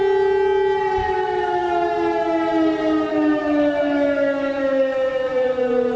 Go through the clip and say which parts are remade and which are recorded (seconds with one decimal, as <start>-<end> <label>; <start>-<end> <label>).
0.0-1.0 recorded; 1.0-1.7 remade; 1.7-3.1 recorded; 3.1-5.6 remade; 5.6-6.0 recorded